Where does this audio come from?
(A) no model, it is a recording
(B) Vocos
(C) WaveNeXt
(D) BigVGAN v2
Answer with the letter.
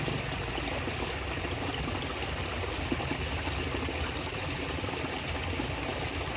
A